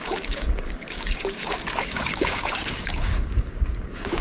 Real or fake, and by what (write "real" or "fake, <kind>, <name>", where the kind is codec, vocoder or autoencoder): fake, codec, DAC